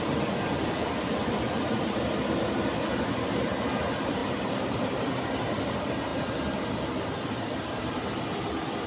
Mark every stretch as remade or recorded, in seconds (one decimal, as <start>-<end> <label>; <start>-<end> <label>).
0.0-4.2 recorded; 4.2-5.3 remade; 5.3-6.1 recorded; 6.1-8.2 remade; 8.2-8.9 recorded